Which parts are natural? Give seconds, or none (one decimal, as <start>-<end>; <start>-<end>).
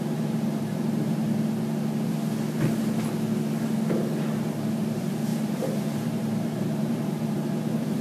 1.2-4.5